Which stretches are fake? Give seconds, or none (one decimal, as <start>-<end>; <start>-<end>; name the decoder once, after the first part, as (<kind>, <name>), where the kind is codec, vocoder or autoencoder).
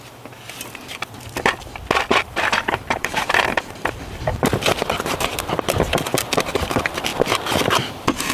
2.1-3.9 (vocoder, BigVGAN v2)